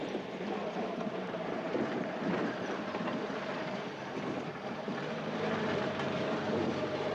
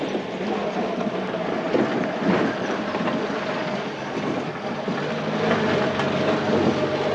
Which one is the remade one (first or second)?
first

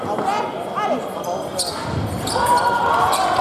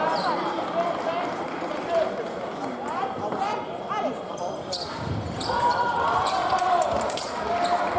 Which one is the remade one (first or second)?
second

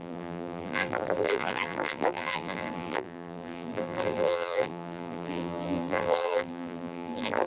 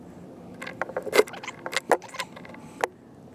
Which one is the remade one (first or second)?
first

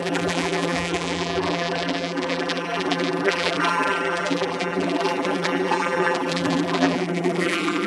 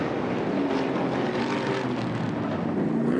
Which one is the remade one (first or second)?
first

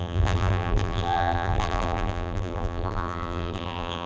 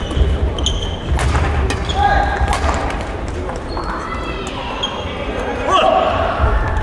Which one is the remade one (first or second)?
first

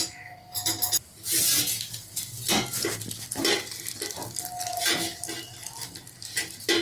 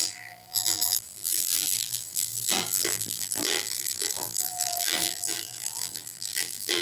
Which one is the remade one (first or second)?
second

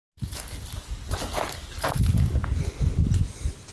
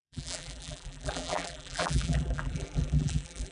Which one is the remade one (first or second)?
second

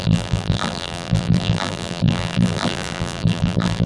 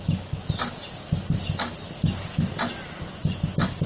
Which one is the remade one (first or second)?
first